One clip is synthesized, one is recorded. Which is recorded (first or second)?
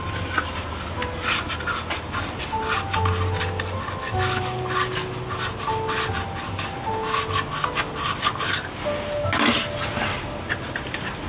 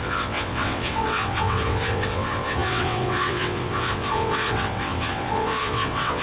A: first